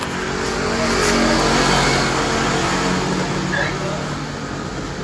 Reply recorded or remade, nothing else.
recorded